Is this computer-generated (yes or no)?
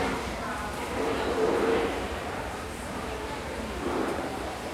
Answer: yes